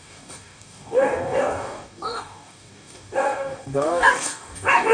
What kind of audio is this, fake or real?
fake